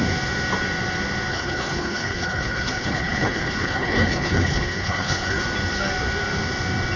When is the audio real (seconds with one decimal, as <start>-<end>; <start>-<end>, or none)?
0.0-1.3; 5.4-7.0